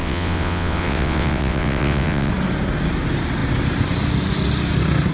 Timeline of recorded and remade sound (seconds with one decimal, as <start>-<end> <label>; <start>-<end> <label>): 0.0-2.3 remade; 2.3-5.1 recorded

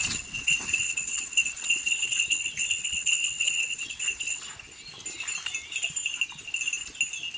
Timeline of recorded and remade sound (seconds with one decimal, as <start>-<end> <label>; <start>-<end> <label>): 0.0-4.4 remade; 4.4-7.4 recorded

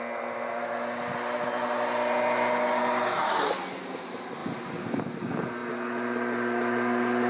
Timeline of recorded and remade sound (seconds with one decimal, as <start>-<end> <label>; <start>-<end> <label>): 0.0-7.3 recorded

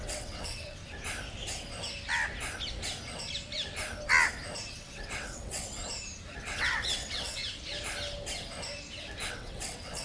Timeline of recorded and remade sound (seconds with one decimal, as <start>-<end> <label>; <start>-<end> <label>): 0.0-0.8 remade; 0.8-4.7 recorded; 4.7-5.8 remade; 5.8-6.4 recorded; 6.4-7.4 remade; 7.4-9.3 recorded; 9.3-10.0 remade

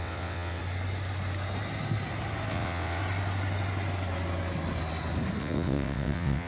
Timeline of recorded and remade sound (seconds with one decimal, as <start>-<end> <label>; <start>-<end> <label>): 0.0-0.6 remade; 0.6-2.5 recorded; 2.5-3.0 remade; 3.0-5.4 recorded; 5.4-6.5 remade

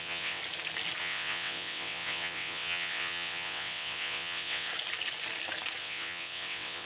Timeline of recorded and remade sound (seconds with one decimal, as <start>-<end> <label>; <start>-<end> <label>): 0.0-0.4 remade; 0.4-1.0 recorded; 1.0-4.7 remade; 4.7-5.8 recorded; 5.8-6.8 remade

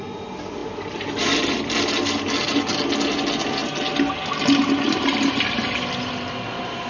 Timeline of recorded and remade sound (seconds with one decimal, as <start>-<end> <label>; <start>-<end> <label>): 0.0-6.9 recorded

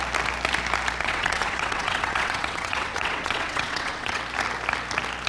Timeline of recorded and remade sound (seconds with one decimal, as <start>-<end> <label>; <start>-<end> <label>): 0.0-1.0 recorded; 1.0-4.2 remade; 4.2-5.3 recorded